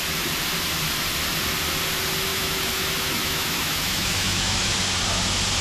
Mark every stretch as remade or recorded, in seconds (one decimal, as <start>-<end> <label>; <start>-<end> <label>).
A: 0.0-2.3 recorded; 2.3-4.7 remade; 4.7-5.6 recorded